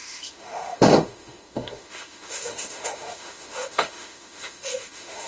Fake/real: fake